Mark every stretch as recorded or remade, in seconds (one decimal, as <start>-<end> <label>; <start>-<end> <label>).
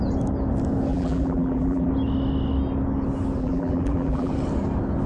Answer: 0.0-0.9 recorded; 0.9-1.9 remade; 1.9-3.4 recorded; 3.4-4.3 remade; 4.3-5.1 recorded